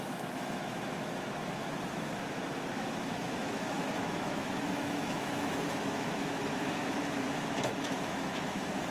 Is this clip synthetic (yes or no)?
yes